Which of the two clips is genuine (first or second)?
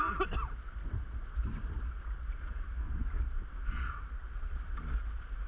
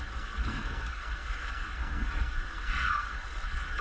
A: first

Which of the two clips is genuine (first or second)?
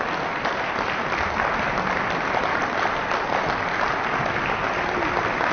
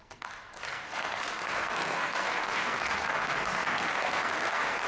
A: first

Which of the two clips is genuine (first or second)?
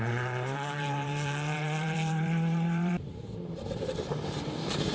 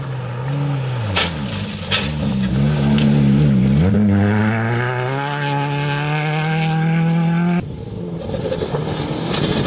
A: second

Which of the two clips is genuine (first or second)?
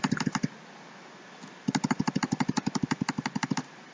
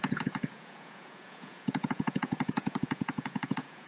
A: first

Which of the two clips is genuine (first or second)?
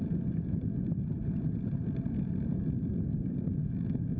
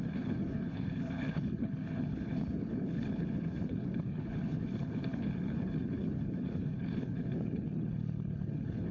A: first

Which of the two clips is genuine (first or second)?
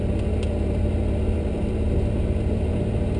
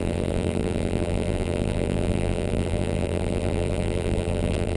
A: first